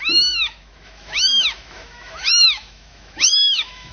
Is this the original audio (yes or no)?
no